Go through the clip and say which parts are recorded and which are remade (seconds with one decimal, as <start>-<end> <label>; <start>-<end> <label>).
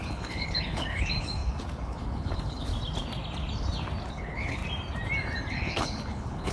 0.0-2.7 remade; 2.7-4.1 recorded; 4.1-4.6 remade; 4.6-5.5 recorded; 5.5-6.5 remade